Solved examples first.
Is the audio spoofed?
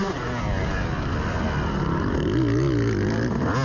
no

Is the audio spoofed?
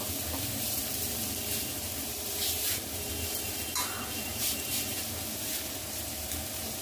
yes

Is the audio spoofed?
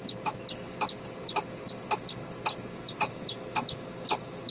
no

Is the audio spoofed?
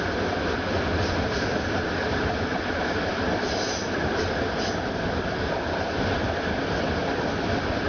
yes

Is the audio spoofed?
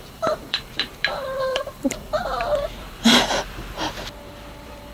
yes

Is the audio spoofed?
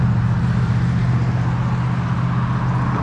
no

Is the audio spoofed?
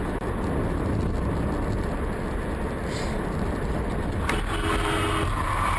no